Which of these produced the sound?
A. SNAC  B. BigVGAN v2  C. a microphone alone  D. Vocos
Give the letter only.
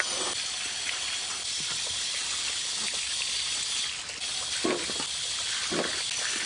C